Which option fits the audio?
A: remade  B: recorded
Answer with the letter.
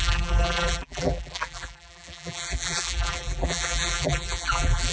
A